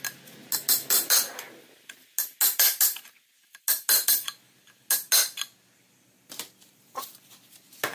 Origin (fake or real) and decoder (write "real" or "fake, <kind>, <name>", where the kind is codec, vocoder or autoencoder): real